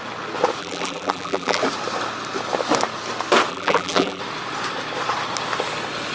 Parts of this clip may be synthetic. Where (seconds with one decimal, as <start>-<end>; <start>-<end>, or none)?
0.6-1.6; 3.5-4.2